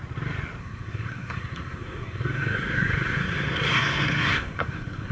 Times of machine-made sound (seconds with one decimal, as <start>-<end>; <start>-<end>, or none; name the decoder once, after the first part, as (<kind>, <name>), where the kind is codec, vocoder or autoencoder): 0.6-5.1 (codec, SNAC)